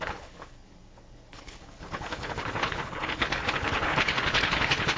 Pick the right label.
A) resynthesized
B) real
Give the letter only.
A